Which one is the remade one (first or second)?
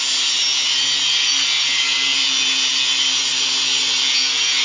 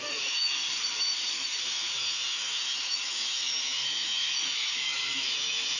second